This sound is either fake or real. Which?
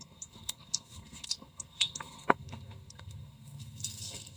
fake